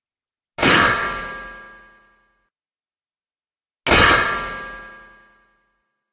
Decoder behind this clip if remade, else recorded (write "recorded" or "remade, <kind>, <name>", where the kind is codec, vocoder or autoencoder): recorded